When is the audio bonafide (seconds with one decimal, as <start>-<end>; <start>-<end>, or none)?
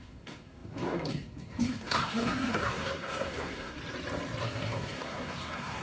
3.8-4.4